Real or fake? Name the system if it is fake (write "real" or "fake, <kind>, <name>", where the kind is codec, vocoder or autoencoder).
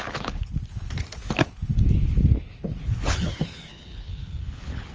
fake, codec, HILCodec